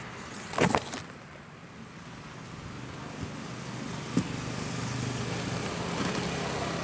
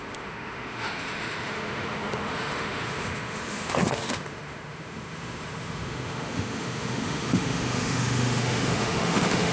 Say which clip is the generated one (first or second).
second